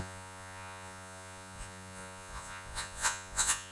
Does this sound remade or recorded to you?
remade